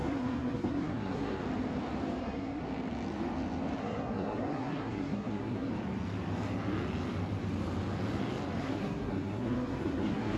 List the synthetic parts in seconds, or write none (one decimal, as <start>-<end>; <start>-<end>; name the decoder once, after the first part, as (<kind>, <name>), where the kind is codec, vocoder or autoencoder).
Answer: 0.0-1.4 (codec, SNAC); 2.2-2.6; 3.8-5.7; 8.6-10.4